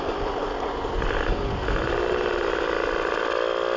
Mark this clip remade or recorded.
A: recorded